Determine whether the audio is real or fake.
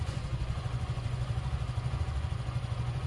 fake